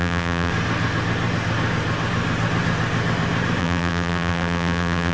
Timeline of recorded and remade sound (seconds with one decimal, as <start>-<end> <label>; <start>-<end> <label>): 0.0-0.5 remade; 0.5-3.6 recorded; 3.6-5.1 remade